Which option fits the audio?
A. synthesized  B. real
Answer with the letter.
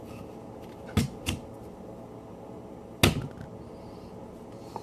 B